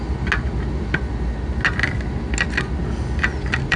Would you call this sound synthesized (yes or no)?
no